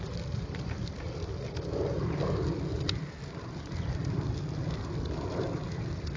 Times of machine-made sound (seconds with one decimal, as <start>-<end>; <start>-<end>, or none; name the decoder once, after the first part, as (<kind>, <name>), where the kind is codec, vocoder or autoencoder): none